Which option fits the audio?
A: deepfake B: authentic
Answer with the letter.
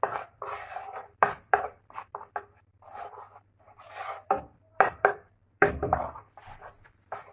A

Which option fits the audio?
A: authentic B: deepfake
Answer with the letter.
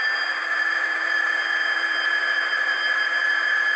B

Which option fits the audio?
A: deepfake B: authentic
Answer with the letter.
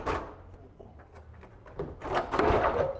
B